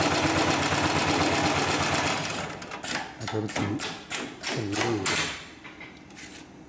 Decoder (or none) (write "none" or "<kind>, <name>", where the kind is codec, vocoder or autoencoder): none